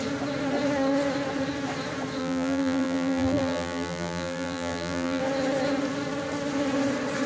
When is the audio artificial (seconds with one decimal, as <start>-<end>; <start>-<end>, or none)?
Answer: 2.2-5.2